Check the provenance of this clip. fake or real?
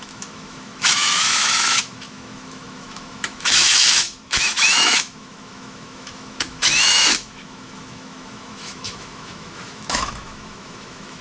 fake